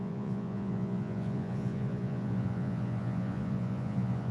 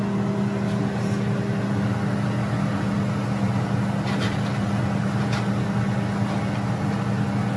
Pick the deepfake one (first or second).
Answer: first